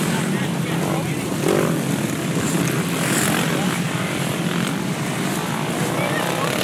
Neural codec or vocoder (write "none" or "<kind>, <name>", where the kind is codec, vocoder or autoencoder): vocoder, BigVGAN v2